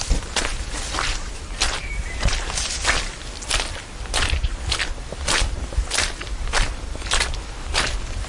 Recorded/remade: recorded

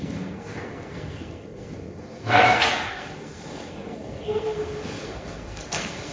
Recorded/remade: remade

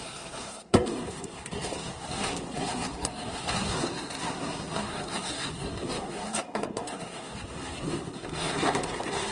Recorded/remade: remade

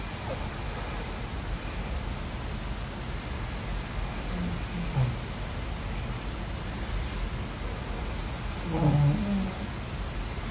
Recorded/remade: recorded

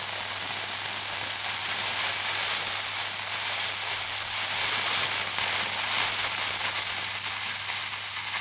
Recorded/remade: recorded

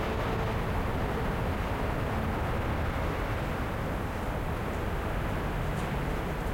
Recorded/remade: recorded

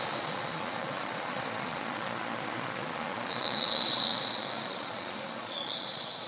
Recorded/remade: remade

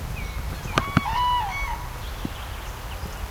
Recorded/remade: recorded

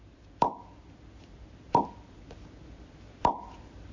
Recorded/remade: recorded